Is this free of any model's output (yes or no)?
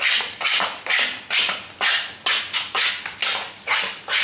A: yes